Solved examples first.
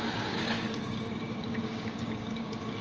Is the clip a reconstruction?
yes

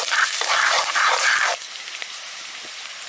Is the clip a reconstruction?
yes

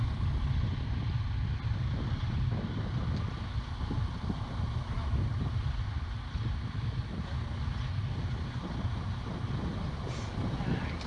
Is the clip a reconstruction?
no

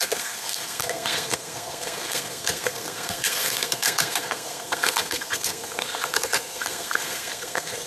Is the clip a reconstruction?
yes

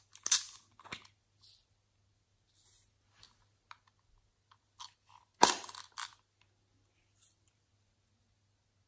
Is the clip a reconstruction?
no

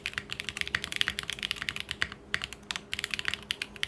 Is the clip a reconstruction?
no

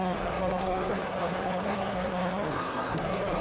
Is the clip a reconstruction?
yes